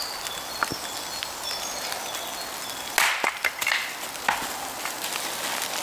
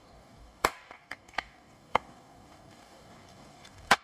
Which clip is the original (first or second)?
first